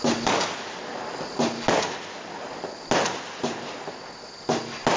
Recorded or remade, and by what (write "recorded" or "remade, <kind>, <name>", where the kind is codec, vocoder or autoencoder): recorded